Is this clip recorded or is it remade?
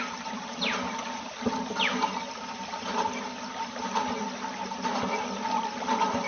recorded